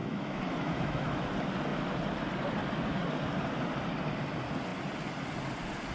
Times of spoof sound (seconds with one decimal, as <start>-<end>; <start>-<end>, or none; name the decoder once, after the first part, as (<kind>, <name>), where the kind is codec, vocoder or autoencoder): 0.0-1.2 (autoencoder, DAC-VAE)

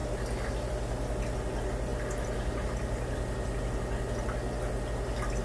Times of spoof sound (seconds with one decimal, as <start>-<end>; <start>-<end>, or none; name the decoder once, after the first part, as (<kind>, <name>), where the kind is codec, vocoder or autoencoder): none

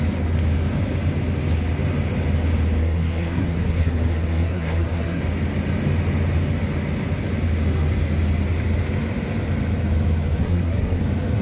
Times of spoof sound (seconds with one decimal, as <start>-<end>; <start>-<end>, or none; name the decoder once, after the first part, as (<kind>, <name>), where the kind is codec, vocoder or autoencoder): 2.8-5.2 (codec, SNAC); 10.4-11.0

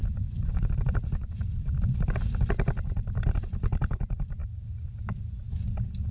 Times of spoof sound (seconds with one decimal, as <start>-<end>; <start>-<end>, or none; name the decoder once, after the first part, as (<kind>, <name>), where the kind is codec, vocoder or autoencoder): 0.0-0.7 (vocoder, Vocos)

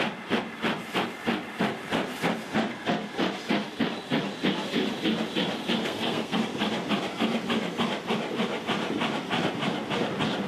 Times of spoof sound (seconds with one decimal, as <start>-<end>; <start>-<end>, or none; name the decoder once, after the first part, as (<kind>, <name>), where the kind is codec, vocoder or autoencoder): 5.8-6.4 (codec, SNAC)

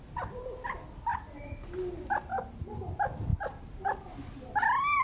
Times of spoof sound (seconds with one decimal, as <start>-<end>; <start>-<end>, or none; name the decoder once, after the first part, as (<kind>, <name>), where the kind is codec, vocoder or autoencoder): none